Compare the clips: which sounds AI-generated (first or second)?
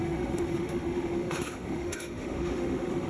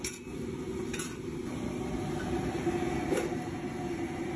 first